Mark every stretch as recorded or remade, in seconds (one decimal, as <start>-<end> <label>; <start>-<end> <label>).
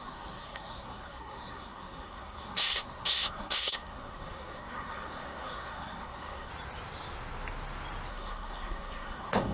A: 0.0-6.5 remade; 6.5-8.1 recorded; 8.1-9.5 remade